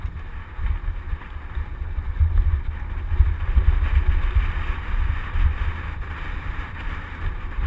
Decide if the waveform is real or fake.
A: real